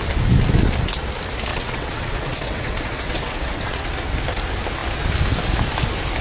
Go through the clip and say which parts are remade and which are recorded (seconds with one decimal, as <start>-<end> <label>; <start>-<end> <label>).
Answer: 0.0-1.5 recorded; 1.5-3.9 remade; 3.9-6.2 recorded